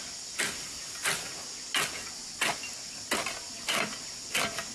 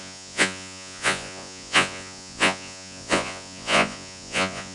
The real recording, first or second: first